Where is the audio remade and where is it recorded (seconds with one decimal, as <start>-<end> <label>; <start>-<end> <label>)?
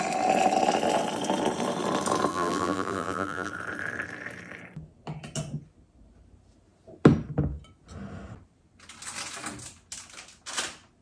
0.0-2.3 recorded; 2.3-3.5 remade; 3.5-11.0 recorded